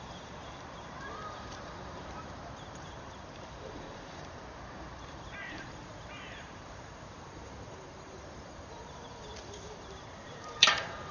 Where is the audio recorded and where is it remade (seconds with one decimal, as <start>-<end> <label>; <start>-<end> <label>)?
0.0-11.1 remade